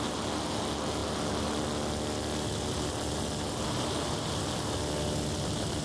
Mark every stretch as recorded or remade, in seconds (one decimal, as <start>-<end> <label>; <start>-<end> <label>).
0.0-5.8 recorded